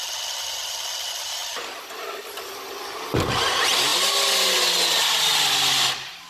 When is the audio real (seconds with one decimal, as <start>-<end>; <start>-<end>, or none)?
0.0-6.3